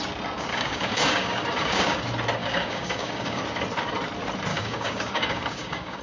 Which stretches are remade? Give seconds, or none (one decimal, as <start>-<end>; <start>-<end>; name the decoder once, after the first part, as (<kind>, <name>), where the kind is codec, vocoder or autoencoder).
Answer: 0.5-2.0 (codec, DAC); 2.4-3.4; 4.5-6.0